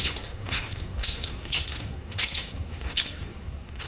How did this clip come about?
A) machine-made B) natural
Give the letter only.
A